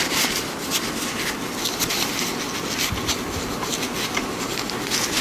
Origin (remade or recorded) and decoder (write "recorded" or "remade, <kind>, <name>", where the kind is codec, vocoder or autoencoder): recorded